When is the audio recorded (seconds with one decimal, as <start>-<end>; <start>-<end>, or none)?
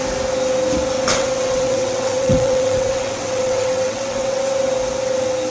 0.0-1.1; 4.4-5.5